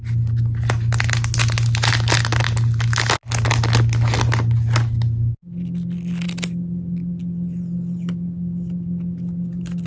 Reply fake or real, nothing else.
real